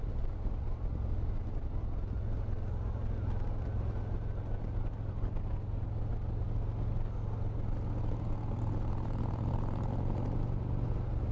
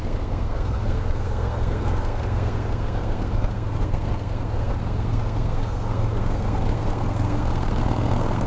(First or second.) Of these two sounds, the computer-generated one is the second